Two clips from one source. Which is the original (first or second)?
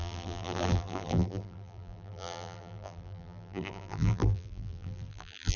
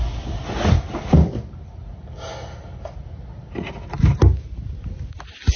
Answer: second